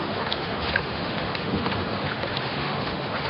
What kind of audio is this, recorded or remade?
remade